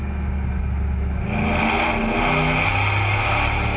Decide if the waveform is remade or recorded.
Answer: recorded